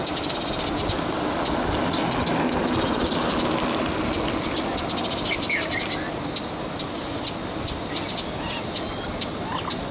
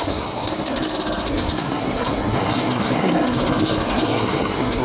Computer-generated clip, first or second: second